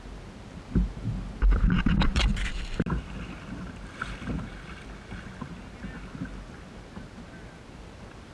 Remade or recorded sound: recorded